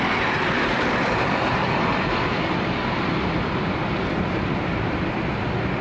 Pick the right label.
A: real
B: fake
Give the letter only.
B